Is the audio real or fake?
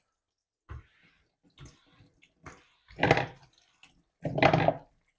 real